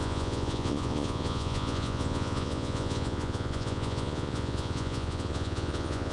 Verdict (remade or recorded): remade